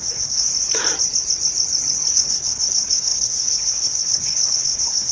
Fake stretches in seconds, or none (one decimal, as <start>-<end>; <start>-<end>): 0.0-0.5; 2.1-5.1